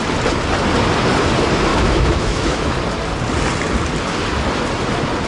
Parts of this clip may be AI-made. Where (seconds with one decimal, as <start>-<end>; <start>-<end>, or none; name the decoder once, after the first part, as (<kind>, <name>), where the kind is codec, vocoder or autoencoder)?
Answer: 1.7-2.8 (autoencoder, DAC-VAE)